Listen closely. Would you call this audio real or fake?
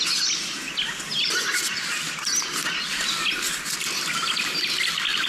real